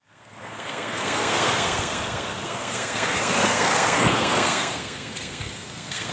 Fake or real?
fake